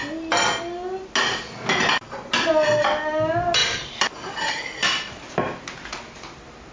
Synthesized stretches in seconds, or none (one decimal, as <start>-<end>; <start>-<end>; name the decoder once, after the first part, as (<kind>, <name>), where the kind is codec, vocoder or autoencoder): none